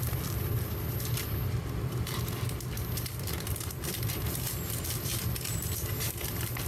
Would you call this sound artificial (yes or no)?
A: yes